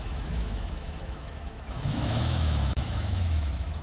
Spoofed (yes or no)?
yes